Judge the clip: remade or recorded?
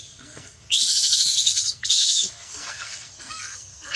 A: remade